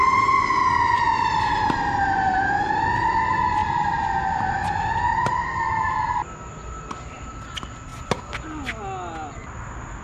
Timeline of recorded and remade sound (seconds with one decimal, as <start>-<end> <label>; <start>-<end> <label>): 0.0-1.8 remade; 1.8-2.3 recorded; 2.3-2.8 remade; 2.8-3.6 recorded; 3.6-4.4 remade; 4.4-10.0 recorded

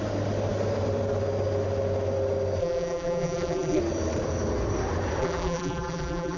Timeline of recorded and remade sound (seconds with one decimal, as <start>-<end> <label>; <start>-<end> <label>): 0.0-2.6 recorded; 2.6-3.8 remade; 3.8-5.2 recorded; 5.2-6.4 remade

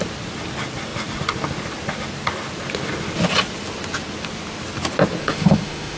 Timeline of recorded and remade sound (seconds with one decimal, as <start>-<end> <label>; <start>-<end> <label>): 0.0-5.2 recorded; 5.2-6.0 remade

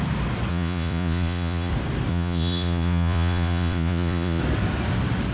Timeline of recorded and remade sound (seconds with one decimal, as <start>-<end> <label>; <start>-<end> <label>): 0.0-0.5 recorded; 0.5-1.7 remade; 1.7-2.1 recorded; 2.1-4.4 remade; 4.4-5.3 recorded

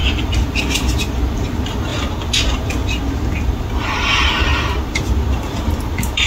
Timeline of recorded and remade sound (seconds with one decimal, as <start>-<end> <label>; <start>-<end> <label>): 0.0-6.3 recorded

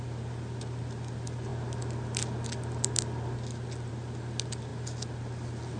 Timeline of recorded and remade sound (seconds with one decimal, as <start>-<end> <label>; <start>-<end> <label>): 0.0-5.8 recorded

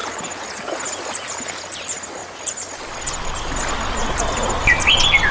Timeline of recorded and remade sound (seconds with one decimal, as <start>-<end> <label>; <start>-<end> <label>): 0.0-5.3 recorded